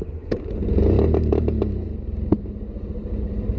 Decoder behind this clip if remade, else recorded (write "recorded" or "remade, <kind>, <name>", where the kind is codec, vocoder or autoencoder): recorded